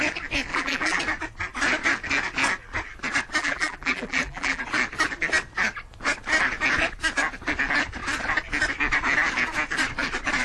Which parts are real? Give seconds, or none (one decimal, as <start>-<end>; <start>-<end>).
0.0-0.5; 1.0-3.4; 4.6-10.4